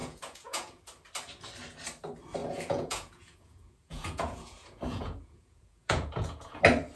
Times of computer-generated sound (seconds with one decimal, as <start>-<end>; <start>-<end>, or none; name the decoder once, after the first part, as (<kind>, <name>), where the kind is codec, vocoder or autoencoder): 0.0-0.8 (vocoder, Vocos); 2.4-6.6